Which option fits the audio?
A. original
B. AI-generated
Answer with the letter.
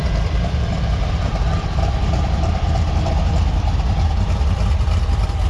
B